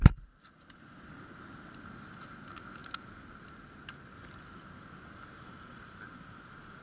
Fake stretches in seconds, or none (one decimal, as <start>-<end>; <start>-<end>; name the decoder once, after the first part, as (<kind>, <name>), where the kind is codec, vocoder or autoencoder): none